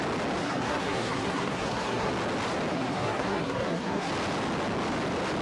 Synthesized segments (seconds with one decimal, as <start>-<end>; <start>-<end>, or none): 0.4-2.1; 2.7-4.1